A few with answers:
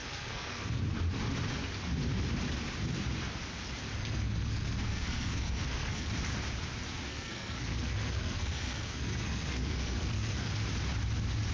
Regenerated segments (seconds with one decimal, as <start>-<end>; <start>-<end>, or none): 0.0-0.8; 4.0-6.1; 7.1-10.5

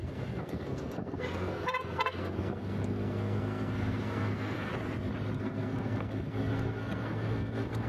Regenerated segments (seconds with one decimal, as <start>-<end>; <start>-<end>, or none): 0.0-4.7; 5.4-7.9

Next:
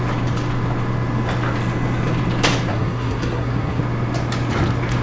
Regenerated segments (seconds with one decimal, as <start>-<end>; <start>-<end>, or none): 2.7-3.8

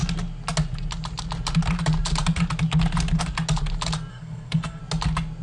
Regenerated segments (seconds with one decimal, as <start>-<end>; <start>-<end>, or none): 4.1-4.8

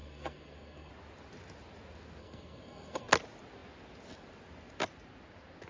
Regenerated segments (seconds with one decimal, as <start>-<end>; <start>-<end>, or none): 0.0-0.9; 2.2-3.1

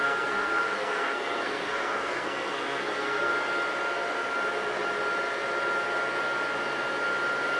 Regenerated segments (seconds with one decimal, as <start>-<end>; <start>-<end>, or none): 0.0-3.3

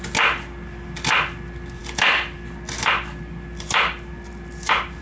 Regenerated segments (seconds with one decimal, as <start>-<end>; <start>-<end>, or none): none

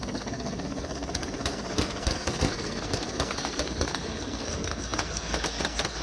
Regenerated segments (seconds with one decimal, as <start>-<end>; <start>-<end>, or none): 0.0-6.0